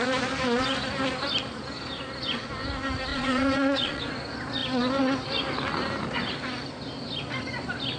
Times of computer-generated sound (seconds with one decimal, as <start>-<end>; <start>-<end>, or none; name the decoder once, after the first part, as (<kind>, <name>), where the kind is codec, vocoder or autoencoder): 3.1-4.0 (vocoder, Vocos)